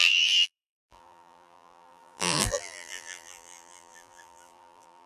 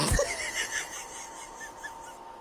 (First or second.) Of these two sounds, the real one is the second